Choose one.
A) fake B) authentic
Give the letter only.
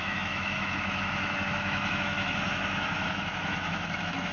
A